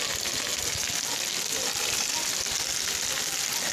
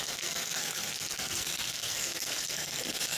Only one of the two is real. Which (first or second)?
first